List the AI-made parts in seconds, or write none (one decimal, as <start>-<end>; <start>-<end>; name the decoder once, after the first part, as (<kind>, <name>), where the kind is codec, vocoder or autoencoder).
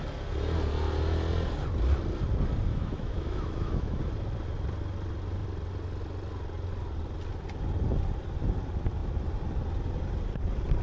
2.7-4.0 (autoencoder, DAC-VAE)